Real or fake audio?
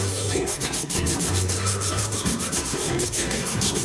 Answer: fake